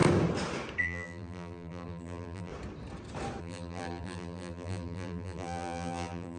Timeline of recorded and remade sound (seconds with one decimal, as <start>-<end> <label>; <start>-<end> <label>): 0.0-0.8 recorded; 0.8-2.5 remade; 2.5-3.4 recorded; 3.4-6.4 remade

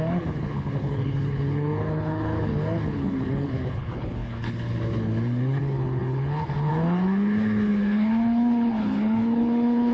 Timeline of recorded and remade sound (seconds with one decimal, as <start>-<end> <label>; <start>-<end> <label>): 0.0-9.9 remade

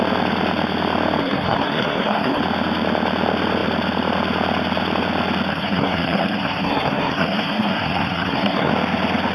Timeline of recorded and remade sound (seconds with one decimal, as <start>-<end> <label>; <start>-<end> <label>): 0.0-1.2 recorded; 1.2-2.4 remade; 2.4-5.5 recorded; 5.5-8.7 remade; 8.7-9.3 recorded

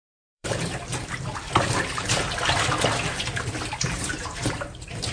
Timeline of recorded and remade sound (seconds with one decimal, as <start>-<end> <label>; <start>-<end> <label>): 0.0-0.9 remade; 0.9-3.9 recorded; 3.9-5.1 remade

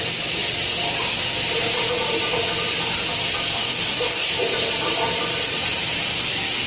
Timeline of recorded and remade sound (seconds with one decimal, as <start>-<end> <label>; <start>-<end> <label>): 0.0-3.6 recorded; 3.6-4.3 remade; 4.3-6.7 recorded

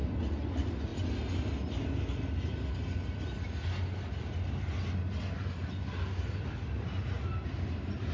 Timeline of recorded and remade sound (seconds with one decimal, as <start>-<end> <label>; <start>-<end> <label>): 0.0-8.1 recorded